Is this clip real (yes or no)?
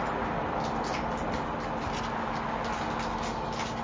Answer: yes